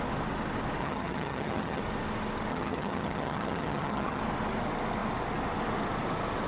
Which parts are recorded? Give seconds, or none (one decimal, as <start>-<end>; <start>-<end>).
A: 0.0-0.8; 1.8-2.5; 4.2-6.5